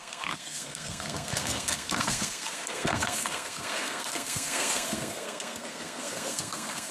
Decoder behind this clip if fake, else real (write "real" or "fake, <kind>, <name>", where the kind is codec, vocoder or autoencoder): fake, codec, SNAC